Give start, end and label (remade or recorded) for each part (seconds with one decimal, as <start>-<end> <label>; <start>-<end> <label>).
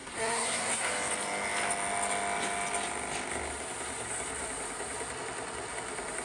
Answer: 0.0-0.9 remade; 0.9-6.2 recorded